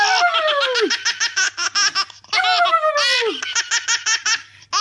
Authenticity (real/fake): real